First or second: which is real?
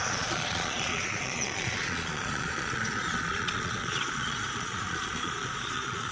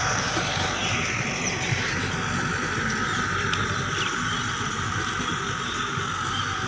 second